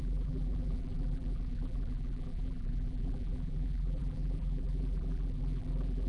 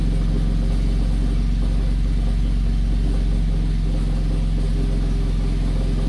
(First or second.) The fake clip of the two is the first